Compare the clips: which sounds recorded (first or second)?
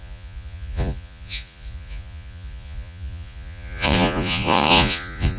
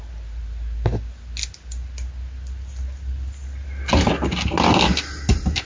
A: second